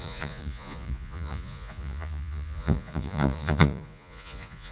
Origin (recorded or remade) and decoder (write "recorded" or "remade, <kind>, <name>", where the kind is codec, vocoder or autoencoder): remade, vocoder, Vocos